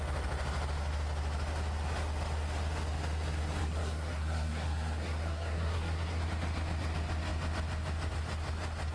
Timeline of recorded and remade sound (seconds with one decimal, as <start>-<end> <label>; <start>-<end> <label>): 0.0-3.6 recorded; 3.6-6.2 remade; 6.2-8.9 recorded